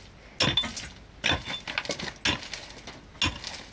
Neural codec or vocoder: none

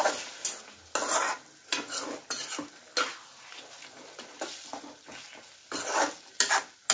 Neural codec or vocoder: none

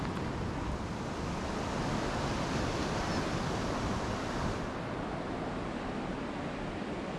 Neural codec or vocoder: none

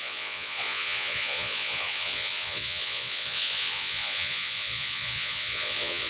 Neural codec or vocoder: vocoder, Vocos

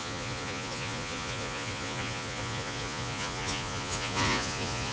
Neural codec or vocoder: vocoder, Vocos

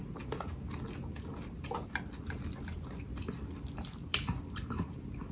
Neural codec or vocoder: none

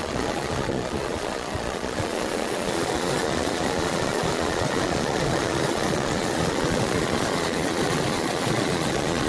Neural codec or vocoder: vocoder, Vocos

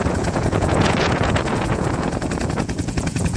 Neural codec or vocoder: vocoder, Vocos